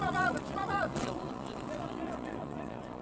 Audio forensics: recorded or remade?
remade